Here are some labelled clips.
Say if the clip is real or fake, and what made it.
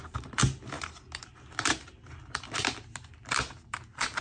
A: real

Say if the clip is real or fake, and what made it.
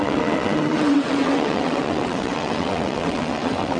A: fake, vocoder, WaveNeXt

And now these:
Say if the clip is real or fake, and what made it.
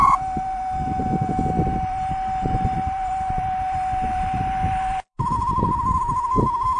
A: fake, vocoder, BigVGAN v2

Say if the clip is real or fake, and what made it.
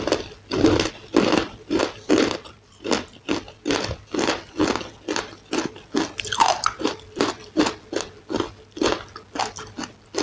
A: real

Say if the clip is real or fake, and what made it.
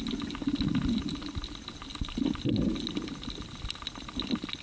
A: real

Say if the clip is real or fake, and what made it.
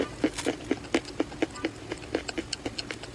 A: real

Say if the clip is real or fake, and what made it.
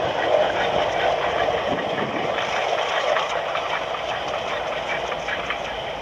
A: real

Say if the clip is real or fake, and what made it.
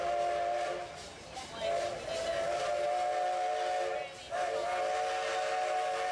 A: real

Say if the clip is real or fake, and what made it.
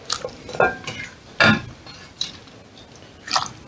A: real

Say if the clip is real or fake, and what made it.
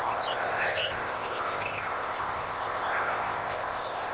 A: fake, codec, ZipCodec